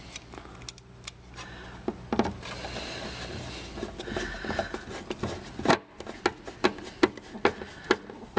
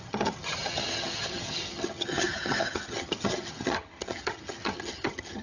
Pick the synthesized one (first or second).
second